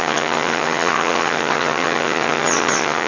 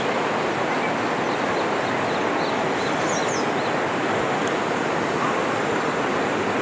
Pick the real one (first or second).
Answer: second